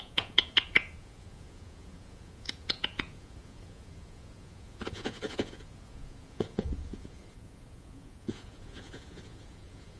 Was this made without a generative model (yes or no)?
no